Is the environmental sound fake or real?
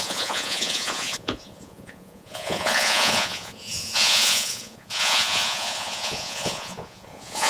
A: fake